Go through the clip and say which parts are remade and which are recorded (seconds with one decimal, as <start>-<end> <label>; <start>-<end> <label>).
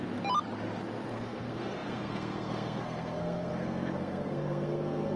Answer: 0.0-1.1 recorded; 1.1-5.2 remade